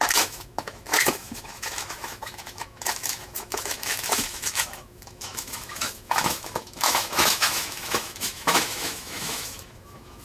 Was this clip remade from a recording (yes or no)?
yes